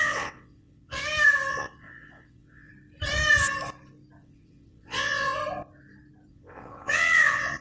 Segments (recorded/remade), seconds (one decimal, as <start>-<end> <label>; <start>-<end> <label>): 0.0-1.0 remade; 1.0-1.5 recorded; 1.5-2.7 remade; 2.7-4.2 recorded; 4.2-5.4 remade; 5.4-6.3 recorded; 6.3-7.6 remade